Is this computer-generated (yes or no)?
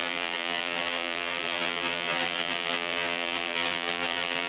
yes